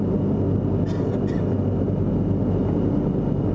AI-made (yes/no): no